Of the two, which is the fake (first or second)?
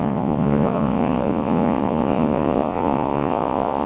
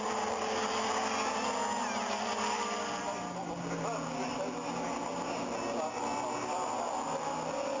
first